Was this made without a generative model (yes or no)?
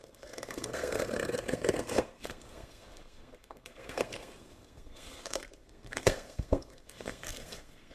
no